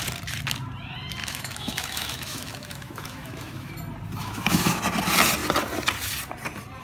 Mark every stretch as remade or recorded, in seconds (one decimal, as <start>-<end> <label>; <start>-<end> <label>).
0.0-1.2 recorded; 1.2-3.7 remade; 3.7-4.2 recorded; 4.2-4.8 remade; 4.8-6.8 recorded